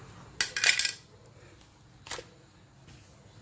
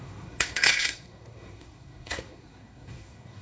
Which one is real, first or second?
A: first